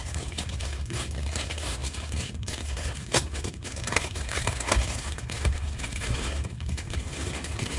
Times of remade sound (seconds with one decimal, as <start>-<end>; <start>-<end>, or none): 0.0-7.8